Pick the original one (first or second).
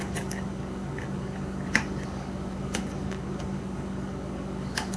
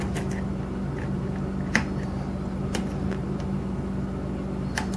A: second